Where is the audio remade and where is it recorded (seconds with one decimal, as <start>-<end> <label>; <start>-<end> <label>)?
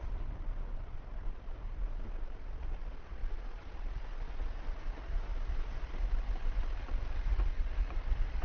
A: 0.0-3.2 recorded; 3.2-4.0 remade; 4.0-5.3 recorded; 5.3-7.3 remade; 7.3-8.4 recorded